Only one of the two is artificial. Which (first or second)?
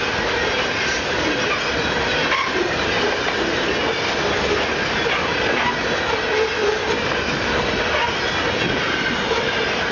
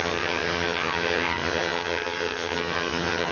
second